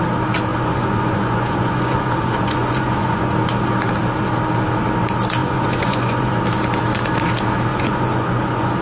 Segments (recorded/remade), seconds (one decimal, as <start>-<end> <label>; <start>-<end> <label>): 0.0-0.5 recorded; 0.5-3.3 remade; 3.3-5.4 recorded; 5.4-6.3 remade; 6.3-7.7 recorded; 7.7-8.8 remade